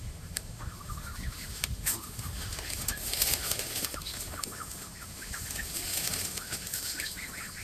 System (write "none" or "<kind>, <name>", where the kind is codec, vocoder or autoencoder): autoencoder, DAC-VAE